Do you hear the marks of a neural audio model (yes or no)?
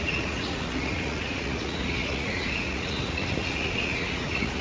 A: yes